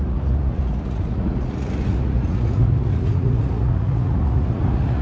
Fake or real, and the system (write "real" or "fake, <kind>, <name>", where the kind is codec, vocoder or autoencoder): fake, vocoder, Vocos